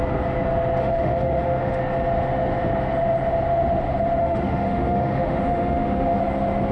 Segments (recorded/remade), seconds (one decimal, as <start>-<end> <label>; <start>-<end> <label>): 0.0-0.8 recorded; 0.8-1.8 remade; 1.8-4.2 recorded; 4.2-6.2 remade; 6.2-6.7 recorded